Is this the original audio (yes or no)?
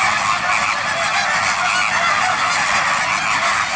yes